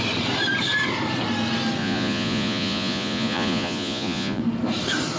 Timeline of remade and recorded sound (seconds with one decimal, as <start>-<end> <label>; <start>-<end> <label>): 0.0-1.8 recorded; 1.8-4.4 remade; 4.4-5.2 recorded

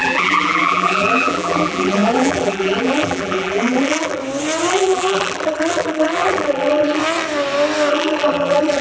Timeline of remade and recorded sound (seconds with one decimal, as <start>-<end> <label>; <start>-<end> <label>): 0.0-4.2 remade; 4.2-4.7 recorded; 4.7-7.0 remade; 7.0-7.9 recorded; 7.9-8.8 remade

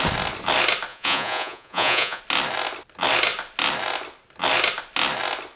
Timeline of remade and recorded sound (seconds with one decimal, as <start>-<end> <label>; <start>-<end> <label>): 0.0-0.9 recorded; 0.9-2.2 remade; 2.2-5.6 recorded

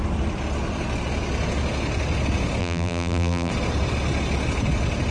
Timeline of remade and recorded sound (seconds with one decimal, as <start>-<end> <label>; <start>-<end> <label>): 0.0-2.6 recorded; 2.6-3.5 remade; 3.5-5.1 recorded

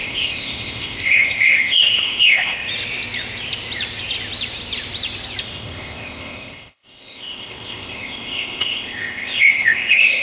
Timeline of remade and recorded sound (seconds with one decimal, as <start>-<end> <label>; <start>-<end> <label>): 0.0-2.7 remade; 2.7-5.4 recorded; 5.4-10.2 remade

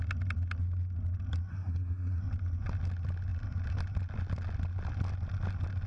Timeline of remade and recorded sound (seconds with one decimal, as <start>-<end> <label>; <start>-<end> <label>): 0.0-1.5 recorded; 1.5-2.2 remade; 2.2-5.9 recorded